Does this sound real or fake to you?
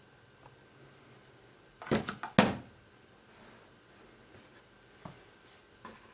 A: real